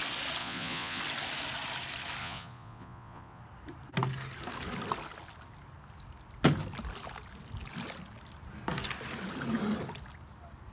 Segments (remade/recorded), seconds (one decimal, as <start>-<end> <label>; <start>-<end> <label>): 0.0-0.4 recorded; 0.4-1.0 remade; 1.0-2.2 recorded; 2.2-3.4 remade; 3.4-10.7 recorded